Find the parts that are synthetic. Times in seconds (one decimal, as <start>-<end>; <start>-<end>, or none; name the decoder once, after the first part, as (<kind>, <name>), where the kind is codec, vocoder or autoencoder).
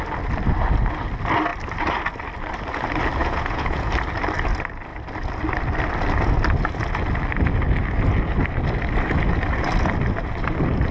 3.2-3.9 (vocoder, Vocos)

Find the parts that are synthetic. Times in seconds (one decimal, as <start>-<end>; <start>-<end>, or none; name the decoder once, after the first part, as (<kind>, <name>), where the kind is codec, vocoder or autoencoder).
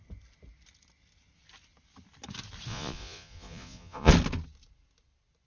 2.7-4.1 (vocoder, Vocos)